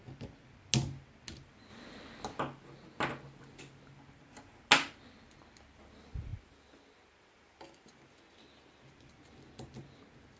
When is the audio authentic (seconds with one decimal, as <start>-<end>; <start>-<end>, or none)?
0.0-10.4